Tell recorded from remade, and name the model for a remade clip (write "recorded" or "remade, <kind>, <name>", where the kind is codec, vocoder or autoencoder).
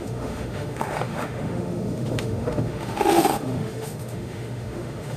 remade, autoencoder, DAC-VAE